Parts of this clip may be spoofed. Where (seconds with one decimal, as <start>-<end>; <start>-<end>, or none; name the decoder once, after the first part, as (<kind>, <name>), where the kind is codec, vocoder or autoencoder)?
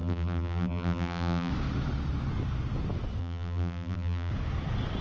0.0-1.5 (vocoder, BigVGAN v2); 3.2-4.3